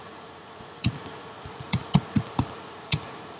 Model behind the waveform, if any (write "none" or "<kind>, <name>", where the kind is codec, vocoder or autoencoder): vocoder, Vocos